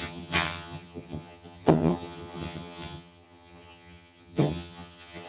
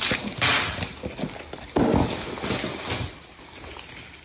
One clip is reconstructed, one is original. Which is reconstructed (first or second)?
first